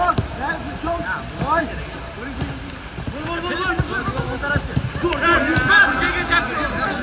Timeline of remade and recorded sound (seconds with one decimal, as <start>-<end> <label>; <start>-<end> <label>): 0.0-7.0 recorded